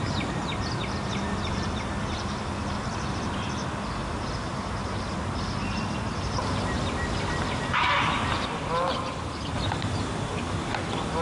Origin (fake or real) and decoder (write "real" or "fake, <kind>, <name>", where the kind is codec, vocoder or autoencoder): real